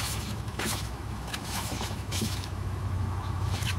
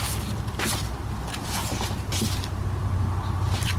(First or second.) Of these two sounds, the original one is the second